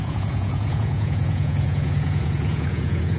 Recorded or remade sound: remade